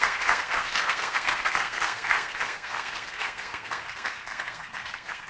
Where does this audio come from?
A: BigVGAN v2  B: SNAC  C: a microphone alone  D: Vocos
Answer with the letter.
B